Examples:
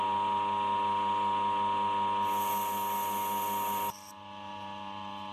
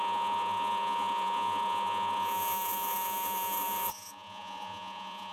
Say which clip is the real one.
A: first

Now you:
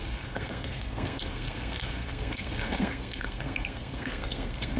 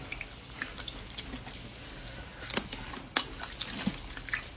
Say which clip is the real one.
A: second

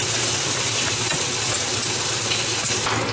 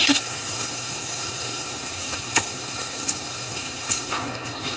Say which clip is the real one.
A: first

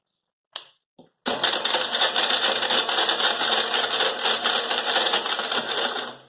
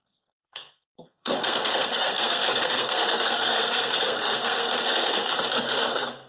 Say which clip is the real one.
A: first